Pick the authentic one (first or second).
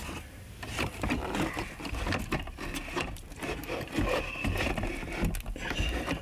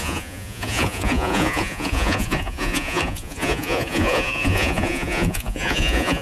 first